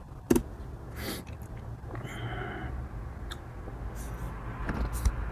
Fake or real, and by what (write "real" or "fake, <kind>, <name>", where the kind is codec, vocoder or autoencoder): real